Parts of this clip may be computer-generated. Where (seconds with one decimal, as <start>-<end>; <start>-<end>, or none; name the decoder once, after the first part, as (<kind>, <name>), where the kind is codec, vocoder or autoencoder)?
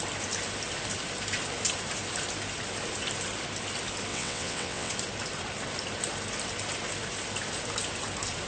4.1-4.9 (vocoder, WaveNeXt)